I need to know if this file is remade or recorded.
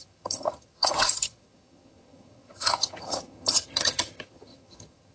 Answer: remade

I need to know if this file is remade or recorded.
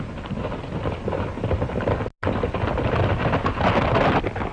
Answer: recorded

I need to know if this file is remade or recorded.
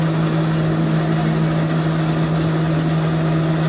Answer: remade